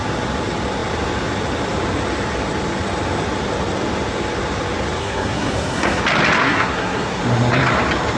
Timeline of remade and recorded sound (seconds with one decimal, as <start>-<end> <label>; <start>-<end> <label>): 0.0-5.0 recorded; 5.0-6.0 remade; 6.0-6.4 recorded; 6.4-7.2 remade; 7.2-8.2 recorded